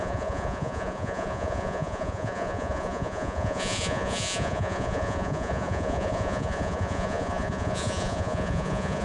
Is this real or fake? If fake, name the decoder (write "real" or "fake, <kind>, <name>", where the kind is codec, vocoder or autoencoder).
fake, vocoder, Vocos